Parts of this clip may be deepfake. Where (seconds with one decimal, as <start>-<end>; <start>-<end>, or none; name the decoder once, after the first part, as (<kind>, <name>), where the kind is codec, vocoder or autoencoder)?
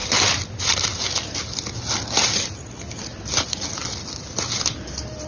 none